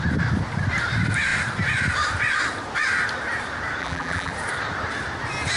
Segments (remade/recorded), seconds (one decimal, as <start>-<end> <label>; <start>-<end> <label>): 0.0-3.8 recorded; 3.8-4.3 remade; 4.3-5.6 recorded